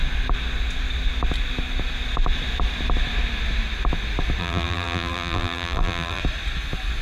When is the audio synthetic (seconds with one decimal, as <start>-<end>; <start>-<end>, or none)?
4.4-6.2